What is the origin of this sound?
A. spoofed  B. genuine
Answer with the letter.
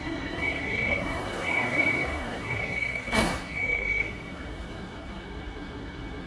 A